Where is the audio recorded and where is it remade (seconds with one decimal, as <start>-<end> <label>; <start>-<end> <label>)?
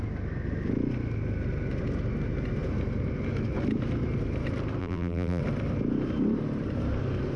0.0-4.8 recorded; 4.8-5.4 remade; 5.4-7.4 recorded